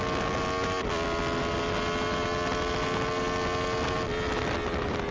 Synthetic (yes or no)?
no